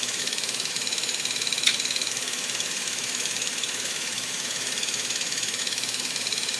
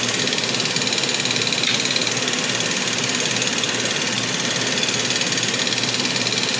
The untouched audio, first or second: second